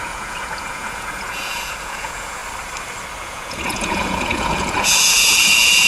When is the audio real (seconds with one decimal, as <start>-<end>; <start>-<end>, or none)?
2.4-3.2